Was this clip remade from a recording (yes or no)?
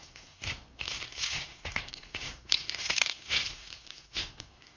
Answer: yes